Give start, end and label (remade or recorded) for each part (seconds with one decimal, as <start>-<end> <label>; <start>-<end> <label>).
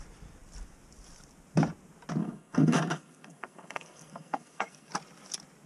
0.0-2.2 recorded; 2.2-4.9 remade; 4.9-5.7 recorded